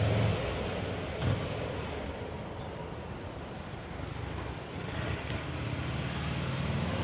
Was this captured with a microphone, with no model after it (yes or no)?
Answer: yes